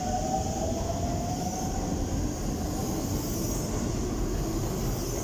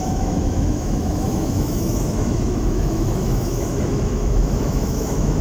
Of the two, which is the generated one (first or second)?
second